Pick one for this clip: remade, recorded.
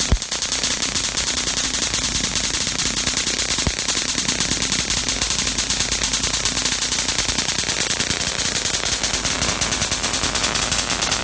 recorded